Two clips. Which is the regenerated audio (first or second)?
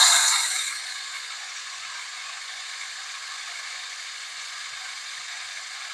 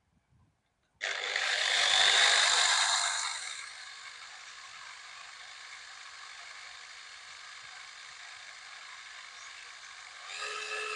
first